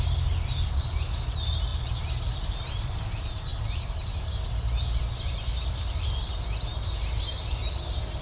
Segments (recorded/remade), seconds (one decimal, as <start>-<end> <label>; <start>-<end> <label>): 0.0-8.2 recorded